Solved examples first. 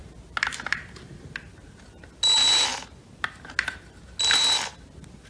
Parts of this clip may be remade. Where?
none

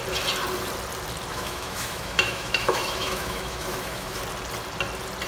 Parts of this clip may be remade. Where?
1.3-4.2 (autoencoder, DAC-VAE)

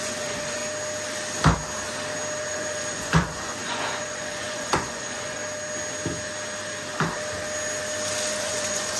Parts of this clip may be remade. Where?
0.0-0.6 (vocoder, Vocos); 2.4-5.4; 8.4-9.0